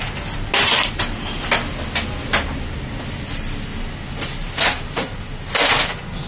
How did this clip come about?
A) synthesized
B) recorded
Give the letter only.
B